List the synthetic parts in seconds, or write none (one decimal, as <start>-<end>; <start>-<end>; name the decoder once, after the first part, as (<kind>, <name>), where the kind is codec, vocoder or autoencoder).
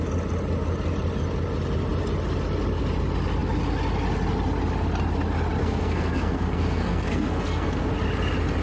5.6-7.9 (codec, SNAC)